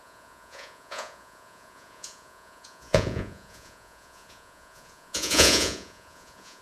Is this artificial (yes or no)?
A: yes